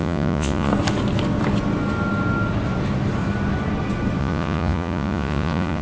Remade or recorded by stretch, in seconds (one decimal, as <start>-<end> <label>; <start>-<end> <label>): 0.0-0.7 remade; 0.7-4.2 recorded; 4.2-5.8 remade